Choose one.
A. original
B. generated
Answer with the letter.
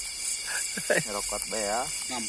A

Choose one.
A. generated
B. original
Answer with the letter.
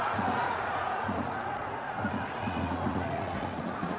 A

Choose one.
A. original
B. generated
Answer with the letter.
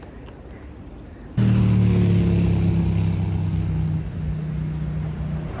A